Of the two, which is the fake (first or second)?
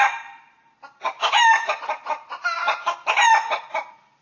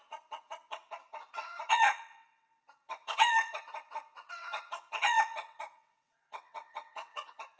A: second